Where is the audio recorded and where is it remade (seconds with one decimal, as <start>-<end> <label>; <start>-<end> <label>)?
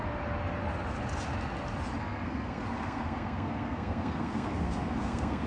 0.0-2.0 recorded; 2.0-5.5 remade